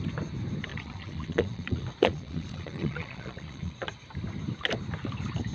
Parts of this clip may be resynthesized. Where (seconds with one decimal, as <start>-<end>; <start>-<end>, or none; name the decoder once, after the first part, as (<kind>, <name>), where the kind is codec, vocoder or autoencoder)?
0.7-3.9 (vocoder, Vocos)